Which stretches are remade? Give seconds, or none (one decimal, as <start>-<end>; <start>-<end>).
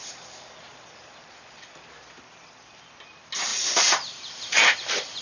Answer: 0.0-0.5; 3.5-5.2